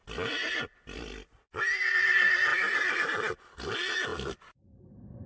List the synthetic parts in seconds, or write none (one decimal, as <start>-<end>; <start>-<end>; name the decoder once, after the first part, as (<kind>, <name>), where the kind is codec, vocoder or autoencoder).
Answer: 2.5-3.6 (vocoder, BigVGAN v2); 4.1-5.3